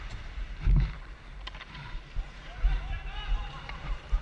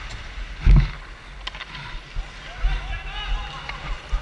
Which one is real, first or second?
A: second